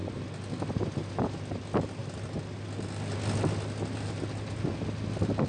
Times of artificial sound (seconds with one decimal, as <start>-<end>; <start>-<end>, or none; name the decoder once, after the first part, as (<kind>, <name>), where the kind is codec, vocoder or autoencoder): none